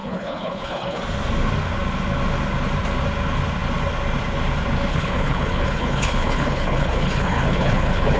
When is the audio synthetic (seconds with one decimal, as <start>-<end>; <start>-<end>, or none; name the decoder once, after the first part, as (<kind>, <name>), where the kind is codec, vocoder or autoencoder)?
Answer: 0.0-1.0 (codec, HILCodec); 4.9-8.2